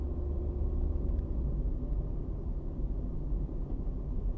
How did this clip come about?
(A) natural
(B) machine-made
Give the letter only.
A